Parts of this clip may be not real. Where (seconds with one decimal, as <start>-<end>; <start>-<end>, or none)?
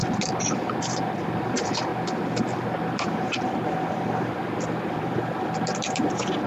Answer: 0.6-1.9; 3.9-6.5